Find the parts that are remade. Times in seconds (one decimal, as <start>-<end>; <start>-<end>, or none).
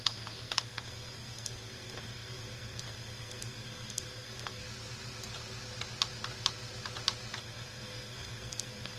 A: 0.0-4.6; 7.4-9.0